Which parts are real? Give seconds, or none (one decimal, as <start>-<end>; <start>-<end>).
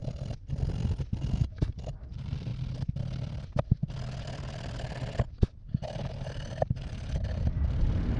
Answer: 0.0-1.4; 2.5-5.7